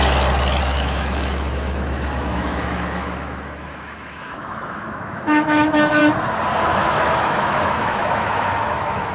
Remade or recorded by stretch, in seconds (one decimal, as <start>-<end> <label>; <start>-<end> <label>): 0.0-0.6 recorded; 0.6-6.0 remade; 6.0-6.6 recorded; 6.6-9.1 remade